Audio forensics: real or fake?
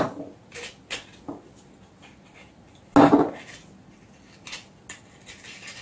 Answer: real